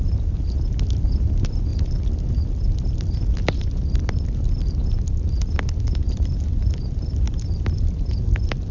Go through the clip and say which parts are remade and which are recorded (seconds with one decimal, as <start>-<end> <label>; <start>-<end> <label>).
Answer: 0.0-8.7 recorded